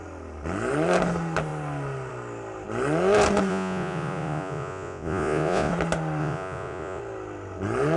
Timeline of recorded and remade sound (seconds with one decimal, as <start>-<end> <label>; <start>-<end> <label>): 0.0-3.5 recorded; 3.5-5.7 remade; 5.7-6.2 recorded; 6.2-7.0 remade; 7.0-8.0 recorded

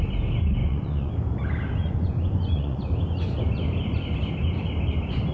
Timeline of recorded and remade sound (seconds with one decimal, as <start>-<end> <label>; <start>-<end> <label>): 0.0-0.6 recorded; 0.6-1.1 remade; 1.1-1.8 recorded; 1.8-2.8 remade; 2.8-5.3 recorded